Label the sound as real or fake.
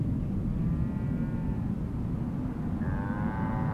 real